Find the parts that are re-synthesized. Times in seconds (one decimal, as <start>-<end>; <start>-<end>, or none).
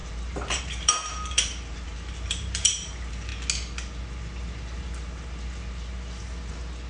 0.0-3.3